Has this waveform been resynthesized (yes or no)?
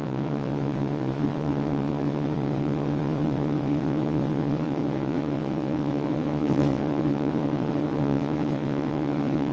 yes